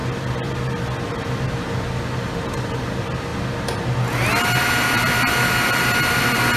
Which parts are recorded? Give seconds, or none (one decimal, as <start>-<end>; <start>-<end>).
0.0-6.6